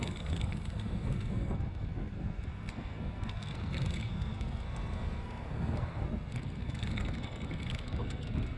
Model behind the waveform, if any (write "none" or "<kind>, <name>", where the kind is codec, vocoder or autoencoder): codec, SNAC